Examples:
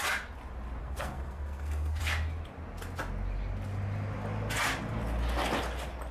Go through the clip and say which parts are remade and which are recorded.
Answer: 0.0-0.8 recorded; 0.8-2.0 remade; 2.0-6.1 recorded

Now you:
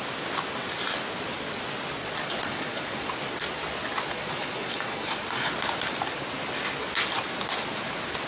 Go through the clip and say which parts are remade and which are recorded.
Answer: 0.0-2.0 recorded; 2.0-3.1 remade; 3.1-4.1 recorded; 4.1-5.5 remade; 5.5-8.3 recorded

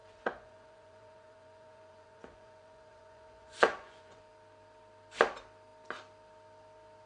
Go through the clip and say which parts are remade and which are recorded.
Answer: 0.0-4.2 remade; 4.2-7.1 recorded

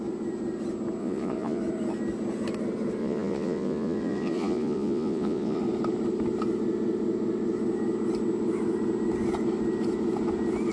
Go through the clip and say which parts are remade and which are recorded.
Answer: 0.0-1.0 recorded; 1.0-1.6 remade; 1.6-3.0 recorded; 3.0-5.6 remade; 5.6-10.7 recorded